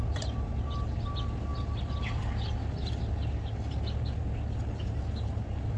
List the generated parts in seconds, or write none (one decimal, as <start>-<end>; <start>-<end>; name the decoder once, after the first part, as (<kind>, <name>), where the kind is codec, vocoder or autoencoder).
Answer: none